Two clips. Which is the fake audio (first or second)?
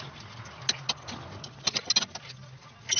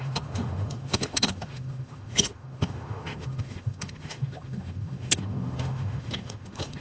second